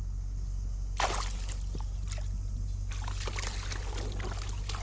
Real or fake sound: real